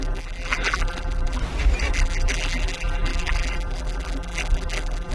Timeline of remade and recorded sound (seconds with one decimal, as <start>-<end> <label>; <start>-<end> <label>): 0.0-1.4 remade; 1.4-1.9 recorded; 1.9-5.1 remade

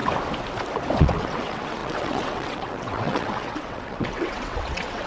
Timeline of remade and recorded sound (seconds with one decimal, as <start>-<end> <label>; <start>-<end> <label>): 0.0-1.0 recorded; 1.0-5.1 remade